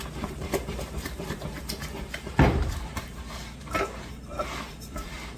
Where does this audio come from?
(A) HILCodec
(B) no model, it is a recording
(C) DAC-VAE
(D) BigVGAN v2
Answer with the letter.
D